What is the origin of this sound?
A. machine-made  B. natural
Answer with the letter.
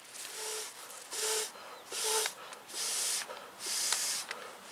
B